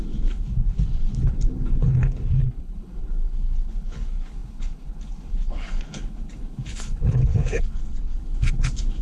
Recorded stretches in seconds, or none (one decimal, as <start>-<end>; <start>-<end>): none

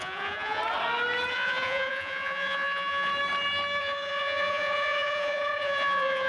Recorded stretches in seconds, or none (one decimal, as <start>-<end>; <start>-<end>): 0.6-1.3; 3.1-3.8

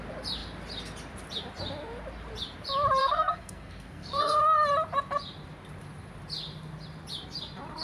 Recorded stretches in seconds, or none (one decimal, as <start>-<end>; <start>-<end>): 0.0-3.0; 4.4-7.8

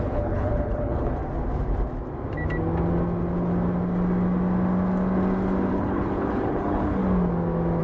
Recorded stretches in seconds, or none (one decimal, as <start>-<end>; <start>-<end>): 1.2-5.7; 7.0-7.8

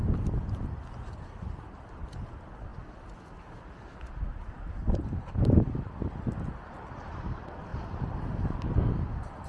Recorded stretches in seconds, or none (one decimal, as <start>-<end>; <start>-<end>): 0.0-7.7; 8.9-9.5

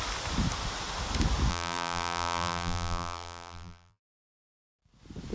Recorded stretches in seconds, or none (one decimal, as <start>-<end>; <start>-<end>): 0.0-1.5; 4.7-5.3

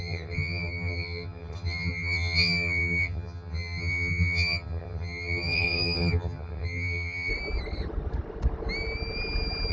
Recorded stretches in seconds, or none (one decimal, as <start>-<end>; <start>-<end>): 7.3-9.7

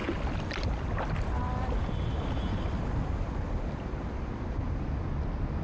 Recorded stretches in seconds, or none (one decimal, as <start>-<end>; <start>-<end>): 0.0-5.6